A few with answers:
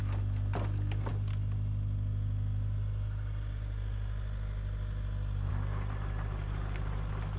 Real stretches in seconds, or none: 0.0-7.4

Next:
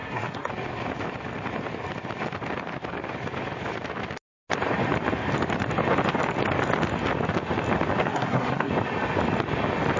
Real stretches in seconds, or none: 0.5-8.0; 8.7-10.0

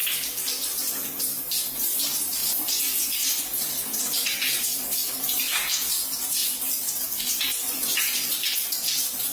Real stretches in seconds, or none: 0.0-2.0; 2.4-4.0

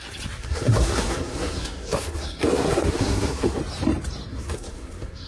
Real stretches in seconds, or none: 0.0-0.4; 3.6-4.3

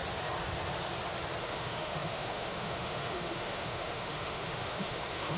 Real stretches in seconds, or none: 0.0-1.4

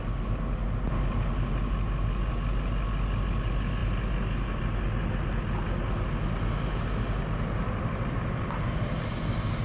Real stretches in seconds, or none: 0.0-9.6

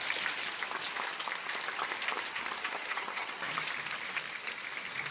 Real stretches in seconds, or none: 0.0-2.6; 3.5-5.1